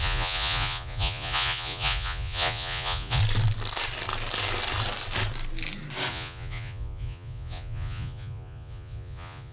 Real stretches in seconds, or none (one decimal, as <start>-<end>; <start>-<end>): 3.2-6.1

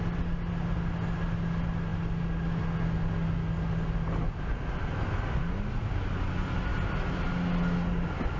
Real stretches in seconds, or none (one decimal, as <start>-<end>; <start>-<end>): 0.0-8.4